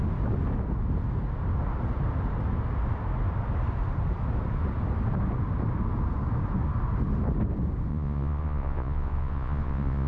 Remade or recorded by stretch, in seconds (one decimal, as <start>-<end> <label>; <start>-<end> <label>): 0.0-7.9 recorded; 7.9-10.1 remade